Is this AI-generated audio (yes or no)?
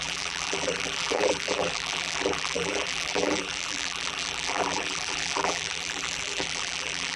yes